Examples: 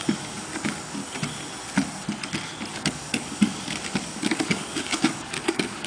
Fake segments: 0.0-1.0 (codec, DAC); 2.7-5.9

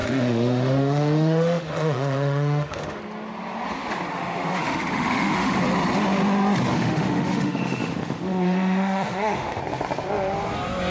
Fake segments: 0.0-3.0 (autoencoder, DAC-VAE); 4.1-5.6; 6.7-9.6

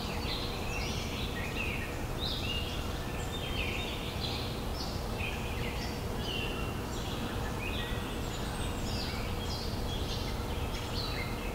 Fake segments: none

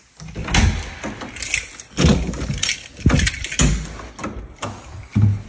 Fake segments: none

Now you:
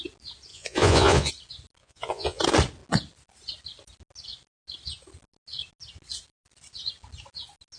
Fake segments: 0.5-1.3 (vocoder, Vocos); 1.8-2.4

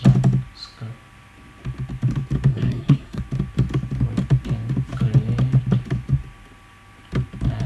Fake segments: 2.5-3.2 (codec, SNAC)

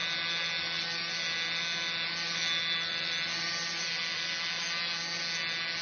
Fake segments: none

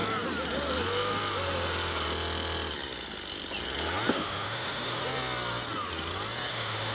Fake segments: 4.1-5.0 (autoencoder, DAC-VAE); 6.5-6.9